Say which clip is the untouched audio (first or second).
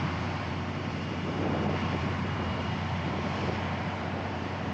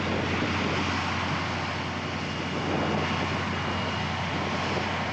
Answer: second